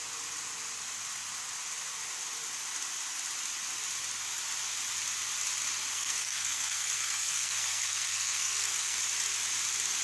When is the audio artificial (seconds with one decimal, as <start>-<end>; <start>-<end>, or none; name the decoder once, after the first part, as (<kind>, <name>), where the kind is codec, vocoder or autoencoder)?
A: 5.9-9.0 (codec, SNAC)